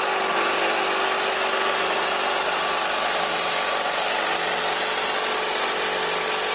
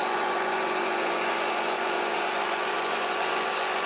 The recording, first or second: first